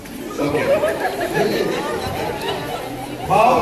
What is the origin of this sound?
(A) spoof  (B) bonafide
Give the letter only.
B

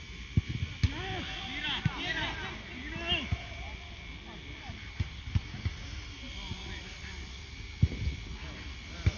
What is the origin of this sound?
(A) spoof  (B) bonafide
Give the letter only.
B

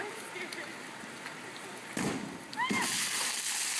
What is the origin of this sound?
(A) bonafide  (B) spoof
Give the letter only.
A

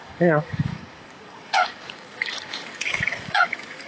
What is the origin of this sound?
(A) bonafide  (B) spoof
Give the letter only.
B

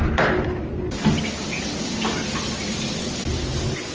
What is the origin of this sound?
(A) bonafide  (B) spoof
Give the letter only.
A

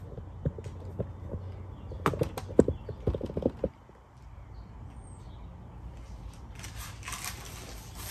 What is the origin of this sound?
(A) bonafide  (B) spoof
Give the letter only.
A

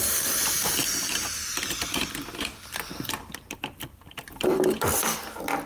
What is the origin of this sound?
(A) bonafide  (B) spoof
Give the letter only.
A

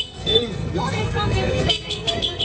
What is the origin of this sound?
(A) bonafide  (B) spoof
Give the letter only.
B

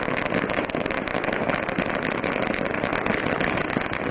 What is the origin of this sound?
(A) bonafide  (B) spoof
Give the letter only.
A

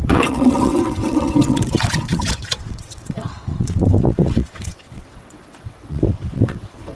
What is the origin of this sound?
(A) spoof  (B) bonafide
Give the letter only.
A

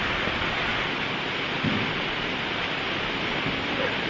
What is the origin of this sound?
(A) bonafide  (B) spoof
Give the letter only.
A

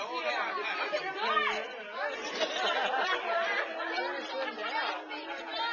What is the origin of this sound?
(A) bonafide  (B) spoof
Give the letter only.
A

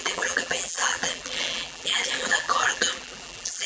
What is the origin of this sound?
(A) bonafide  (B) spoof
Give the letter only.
B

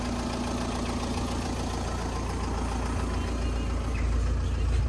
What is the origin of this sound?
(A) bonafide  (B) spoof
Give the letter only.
A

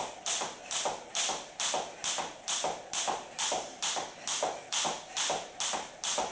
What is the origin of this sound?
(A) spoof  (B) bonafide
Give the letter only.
B